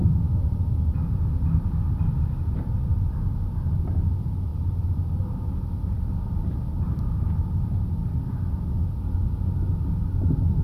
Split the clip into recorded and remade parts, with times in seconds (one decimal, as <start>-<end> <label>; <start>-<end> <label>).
0.0-10.6 recorded